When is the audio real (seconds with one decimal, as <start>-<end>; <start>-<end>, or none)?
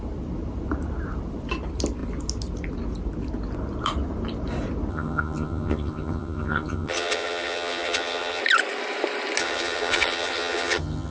0.0-4.9; 8.4-9.4